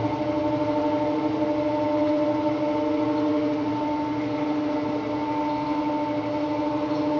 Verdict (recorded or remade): recorded